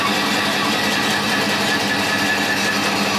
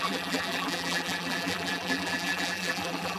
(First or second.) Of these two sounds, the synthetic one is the second